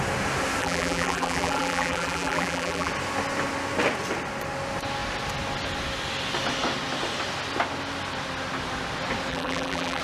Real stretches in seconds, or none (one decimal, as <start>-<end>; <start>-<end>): 0.0-0.6; 2.9-9.3

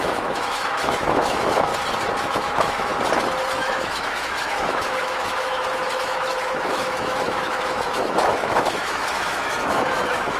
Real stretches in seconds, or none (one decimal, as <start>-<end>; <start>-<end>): 1.7-2.2; 2.9-3.6